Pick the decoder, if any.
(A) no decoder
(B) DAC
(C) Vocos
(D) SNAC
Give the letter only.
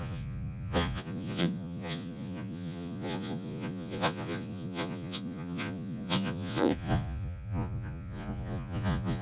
C